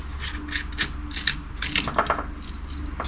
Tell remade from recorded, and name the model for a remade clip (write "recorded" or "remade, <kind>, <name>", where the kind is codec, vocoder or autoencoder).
recorded